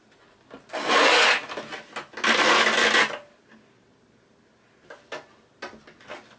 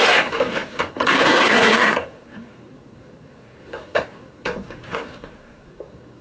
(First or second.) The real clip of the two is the first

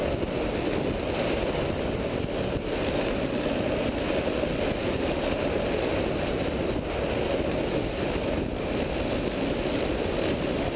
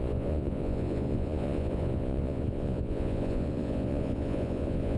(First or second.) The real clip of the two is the first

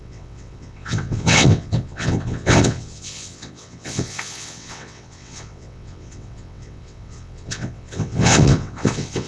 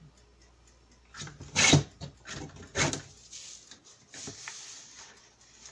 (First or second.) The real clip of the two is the second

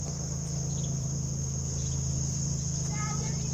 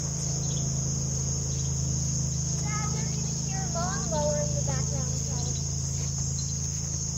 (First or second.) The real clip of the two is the second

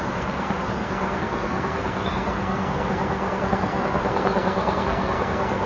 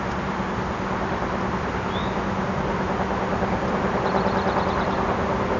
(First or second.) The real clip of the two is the second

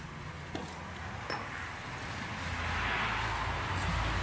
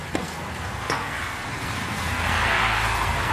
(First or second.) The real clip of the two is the first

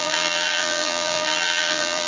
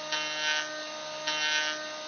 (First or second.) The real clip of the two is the second